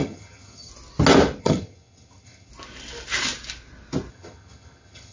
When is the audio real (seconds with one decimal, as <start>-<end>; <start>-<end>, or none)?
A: 0.7-1.4; 2.5-4.1